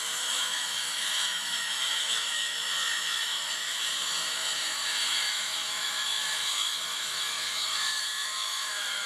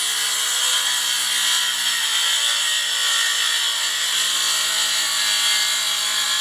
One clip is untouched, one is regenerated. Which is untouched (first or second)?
second